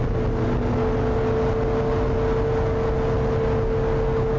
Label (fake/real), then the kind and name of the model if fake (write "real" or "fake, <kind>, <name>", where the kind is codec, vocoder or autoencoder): real